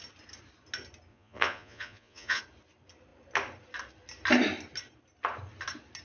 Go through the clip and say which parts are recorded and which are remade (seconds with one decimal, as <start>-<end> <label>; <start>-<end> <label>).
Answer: 0.0-1.1 recorded; 1.1-2.4 remade; 2.4-6.0 recorded